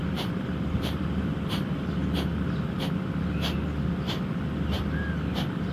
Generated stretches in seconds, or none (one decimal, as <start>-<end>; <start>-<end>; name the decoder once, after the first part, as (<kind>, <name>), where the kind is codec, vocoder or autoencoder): 0.0-2.0 (vocoder, BigVGAN v2); 4.1-5.7